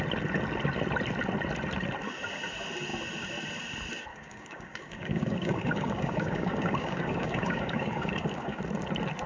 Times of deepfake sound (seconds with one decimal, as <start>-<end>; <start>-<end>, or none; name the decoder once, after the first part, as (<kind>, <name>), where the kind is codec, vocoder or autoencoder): 4.1-8.6 (codec, DAC)